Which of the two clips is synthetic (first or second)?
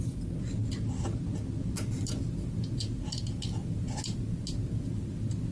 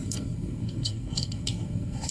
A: second